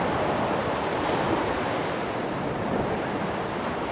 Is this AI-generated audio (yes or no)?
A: no